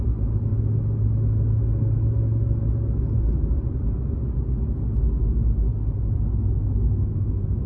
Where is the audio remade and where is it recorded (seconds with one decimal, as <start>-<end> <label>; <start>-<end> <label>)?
0.0-7.7 recorded